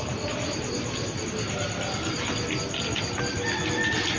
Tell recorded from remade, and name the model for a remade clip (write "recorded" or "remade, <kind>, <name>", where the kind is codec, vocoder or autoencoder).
recorded